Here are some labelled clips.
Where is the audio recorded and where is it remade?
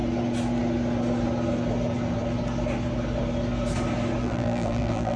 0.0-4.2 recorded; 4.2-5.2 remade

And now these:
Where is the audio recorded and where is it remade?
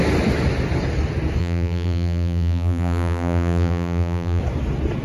0.0-1.4 recorded; 1.4-4.4 remade; 4.4-5.0 recorded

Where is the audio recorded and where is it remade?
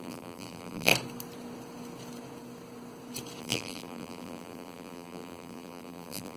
0.0-0.9 remade; 0.9-3.4 recorded; 3.4-6.4 remade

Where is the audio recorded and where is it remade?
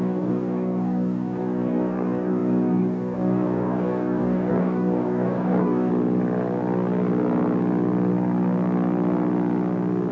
0.0-5.9 remade; 5.9-10.1 recorded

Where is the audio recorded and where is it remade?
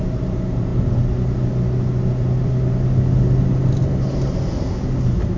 0.0-5.4 recorded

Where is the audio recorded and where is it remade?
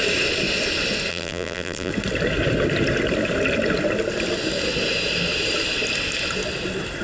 0.0-1.1 recorded; 1.1-1.9 remade; 1.9-7.0 recorded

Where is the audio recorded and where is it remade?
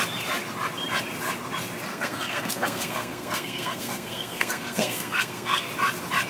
0.0-1.9 recorded; 1.9-5.7 remade; 5.7-6.3 recorded